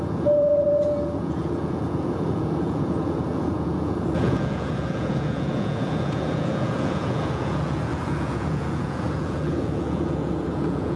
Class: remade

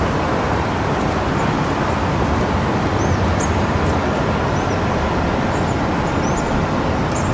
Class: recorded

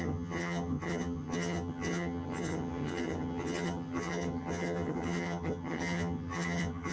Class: remade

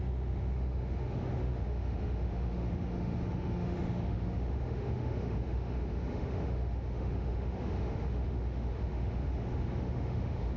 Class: remade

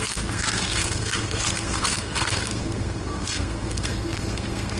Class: remade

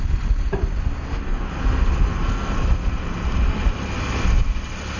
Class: recorded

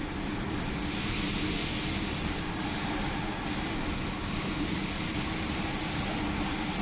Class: recorded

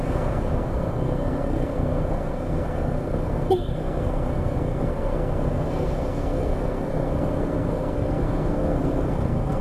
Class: remade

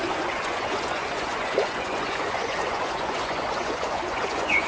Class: remade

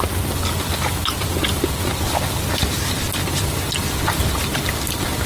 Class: recorded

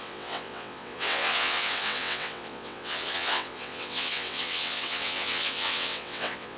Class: remade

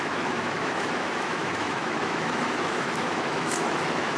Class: remade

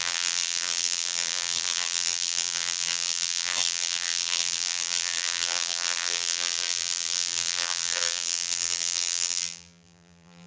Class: remade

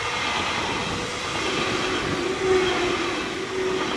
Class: recorded